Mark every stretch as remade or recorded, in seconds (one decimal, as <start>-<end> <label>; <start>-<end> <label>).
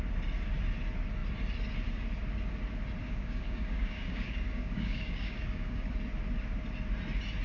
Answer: 0.0-3.0 recorded; 3.0-5.9 remade; 5.9-7.4 recorded